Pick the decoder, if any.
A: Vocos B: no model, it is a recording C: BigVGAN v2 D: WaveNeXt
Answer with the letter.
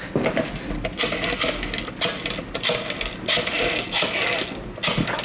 B